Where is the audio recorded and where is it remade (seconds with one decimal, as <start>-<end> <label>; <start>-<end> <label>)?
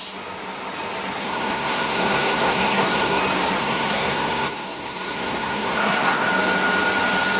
0.0-1.2 recorded; 1.2-3.2 remade; 3.2-3.6 recorded; 3.6-6.3 remade; 6.3-7.4 recorded